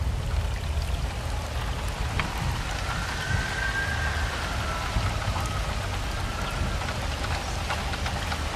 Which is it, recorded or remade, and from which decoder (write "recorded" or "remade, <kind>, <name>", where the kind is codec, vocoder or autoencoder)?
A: recorded